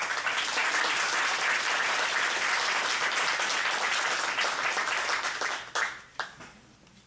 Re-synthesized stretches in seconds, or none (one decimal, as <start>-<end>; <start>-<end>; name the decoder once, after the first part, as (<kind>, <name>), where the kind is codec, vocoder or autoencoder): none